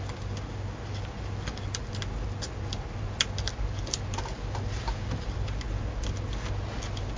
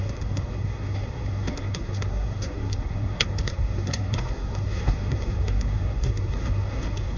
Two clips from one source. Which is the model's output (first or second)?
second